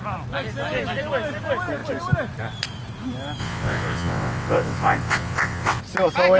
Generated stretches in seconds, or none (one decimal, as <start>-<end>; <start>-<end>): 3.4-5.8